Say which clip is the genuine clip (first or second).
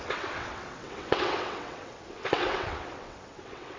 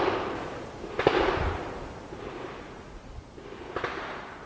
second